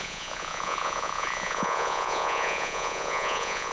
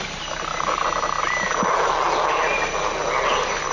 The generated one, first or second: first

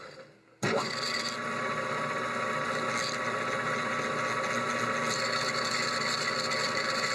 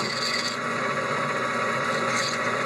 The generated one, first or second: second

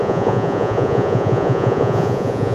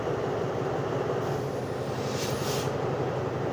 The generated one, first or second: first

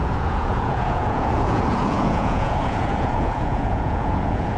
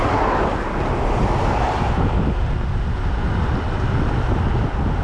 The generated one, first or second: first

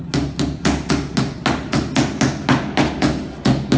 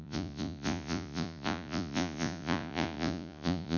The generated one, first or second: second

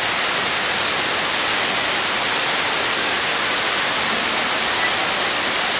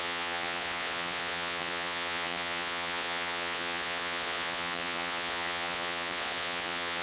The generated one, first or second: second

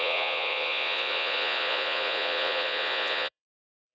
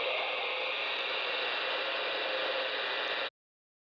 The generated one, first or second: first